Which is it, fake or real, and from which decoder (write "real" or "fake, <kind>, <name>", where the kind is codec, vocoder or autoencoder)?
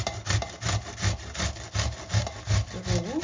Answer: real